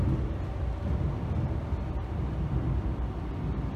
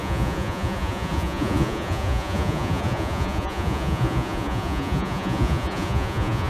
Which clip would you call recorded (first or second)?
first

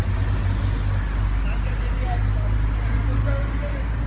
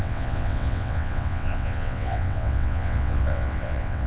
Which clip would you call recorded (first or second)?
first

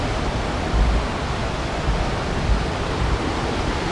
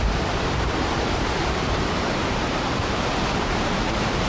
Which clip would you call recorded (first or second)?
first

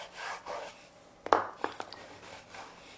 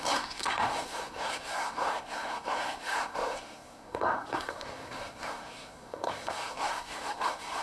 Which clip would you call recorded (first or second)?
first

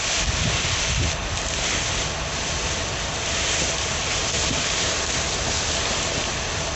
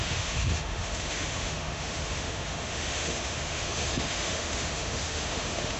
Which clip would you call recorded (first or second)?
first